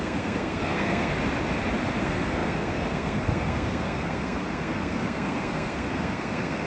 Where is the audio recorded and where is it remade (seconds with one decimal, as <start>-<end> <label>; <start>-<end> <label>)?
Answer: 0.0-1.1 remade; 1.1-2.0 recorded; 2.0-6.7 remade